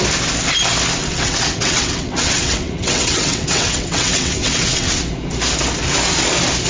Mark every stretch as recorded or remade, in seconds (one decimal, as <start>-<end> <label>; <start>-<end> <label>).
0.0-1.0 recorded; 1.0-5.0 remade; 5.0-6.7 recorded

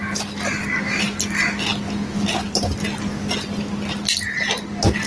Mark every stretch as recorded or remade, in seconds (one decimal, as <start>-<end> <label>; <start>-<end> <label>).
0.0-5.1 recorded

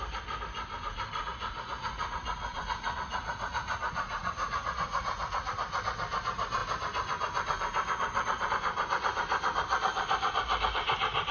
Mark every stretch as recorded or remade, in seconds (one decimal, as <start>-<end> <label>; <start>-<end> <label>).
0.0-1.2 recorded; 1.2-5.5 remade; 5.5-11.3 recorded

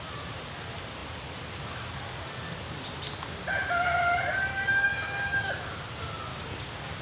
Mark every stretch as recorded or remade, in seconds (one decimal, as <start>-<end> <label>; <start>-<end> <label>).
0.0-4.5 recorded; 4.5-5.5 remade; 5.5-6.3 recorded; 6.3-7.0 remade

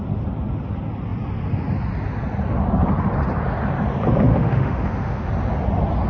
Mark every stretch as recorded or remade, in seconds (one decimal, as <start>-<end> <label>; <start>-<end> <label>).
0.0-4.3 recorded; 4.3-5.3 remade; 5.3-6.1 recorded

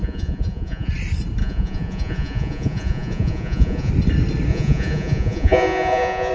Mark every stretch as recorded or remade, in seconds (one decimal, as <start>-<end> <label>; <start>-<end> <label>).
0.0-0.9 remade; 0.9-1.4 recorded; 1.4-3.9 remade; 3.9-4.5 recorded; 4.5-6.3 remade

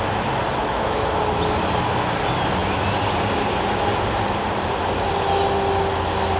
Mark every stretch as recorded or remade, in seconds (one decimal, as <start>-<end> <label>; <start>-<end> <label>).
0.0-0.6 recorded; 0.6-1.2 remade; 1.2-6.4 recorded